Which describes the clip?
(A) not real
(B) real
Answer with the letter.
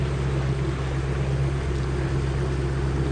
B